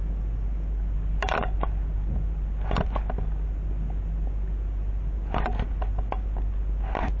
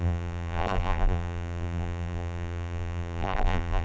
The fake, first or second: second